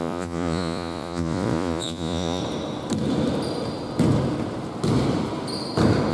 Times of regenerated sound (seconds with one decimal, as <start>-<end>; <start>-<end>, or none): 0.0-2.4